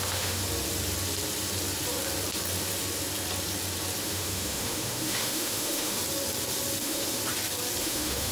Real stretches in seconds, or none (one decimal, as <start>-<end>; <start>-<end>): 0.4-4.0; 6.0-6.8; 7.2-7.8